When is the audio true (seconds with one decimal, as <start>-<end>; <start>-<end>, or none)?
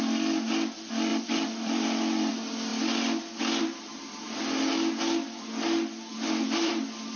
0.0-1.1; 2.3-6.1; 6.7-7.2